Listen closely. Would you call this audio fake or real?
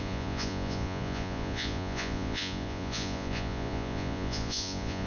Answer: fake